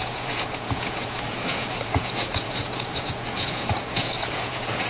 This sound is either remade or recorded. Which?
remade